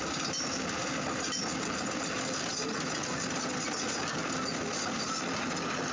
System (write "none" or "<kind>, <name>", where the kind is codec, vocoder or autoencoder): none